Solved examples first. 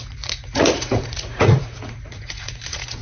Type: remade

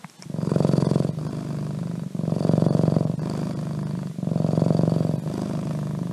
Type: recorded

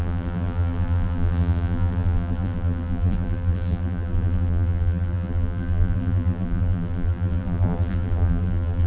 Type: remade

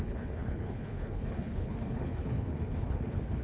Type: remade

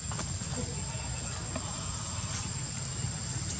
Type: recorded